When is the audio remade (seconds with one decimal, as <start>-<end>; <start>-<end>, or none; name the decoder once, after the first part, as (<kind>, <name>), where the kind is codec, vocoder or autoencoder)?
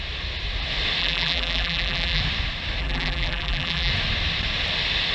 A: 1.0-2.2 (vocoder, BigVGAN v2); 2.8-3.9